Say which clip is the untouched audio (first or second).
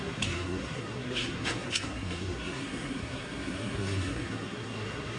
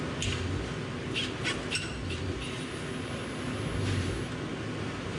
second